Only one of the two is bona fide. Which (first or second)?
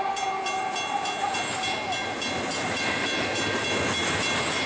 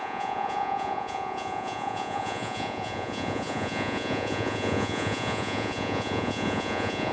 first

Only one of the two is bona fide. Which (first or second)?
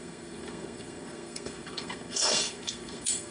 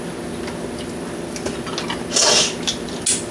second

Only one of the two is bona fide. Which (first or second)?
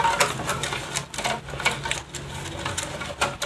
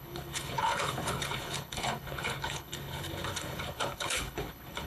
first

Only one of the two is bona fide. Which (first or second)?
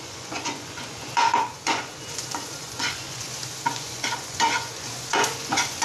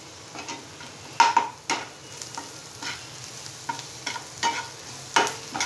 second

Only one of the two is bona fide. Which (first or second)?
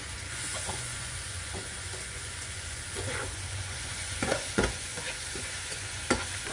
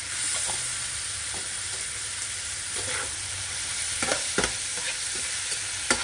second